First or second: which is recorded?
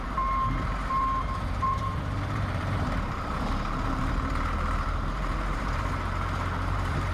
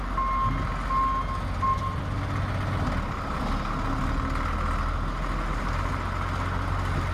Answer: second